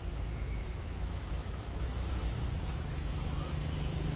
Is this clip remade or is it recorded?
remade